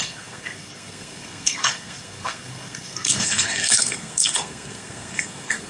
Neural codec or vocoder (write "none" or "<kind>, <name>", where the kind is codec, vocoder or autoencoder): codec, SNAC